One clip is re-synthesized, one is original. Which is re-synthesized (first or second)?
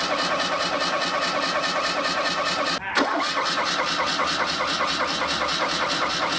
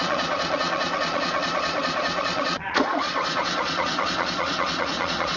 second